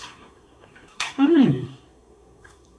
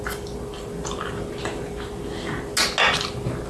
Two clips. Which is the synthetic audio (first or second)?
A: first